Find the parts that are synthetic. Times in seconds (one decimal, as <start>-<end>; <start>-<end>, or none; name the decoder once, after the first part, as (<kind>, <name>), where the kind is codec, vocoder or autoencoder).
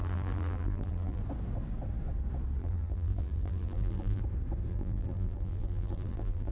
0.0-1.2 (vocoder, BigVGAN v2); 2.6-4.2; 4.7-6.5